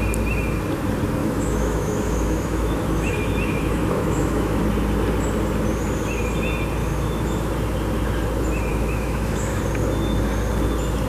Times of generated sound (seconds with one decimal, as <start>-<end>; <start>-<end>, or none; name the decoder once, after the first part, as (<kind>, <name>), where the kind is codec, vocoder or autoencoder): 1.2-4.6 (autoencoder, DAC-VAE); 6.8-7.5; 8.7-9.6